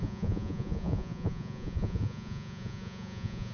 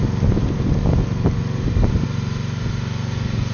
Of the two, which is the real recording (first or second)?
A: second